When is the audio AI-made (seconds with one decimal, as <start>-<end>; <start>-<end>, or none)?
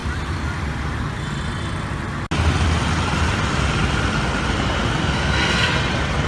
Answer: 5.0-5.7